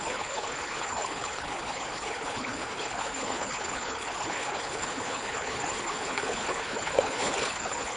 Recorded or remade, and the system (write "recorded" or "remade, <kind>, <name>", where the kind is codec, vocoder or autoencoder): remade, codec, HILCodec